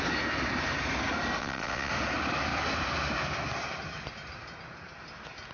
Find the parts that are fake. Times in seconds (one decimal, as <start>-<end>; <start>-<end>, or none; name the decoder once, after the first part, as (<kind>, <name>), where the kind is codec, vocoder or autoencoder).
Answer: 1.4-1.9 (vocoder, WaveNeXt)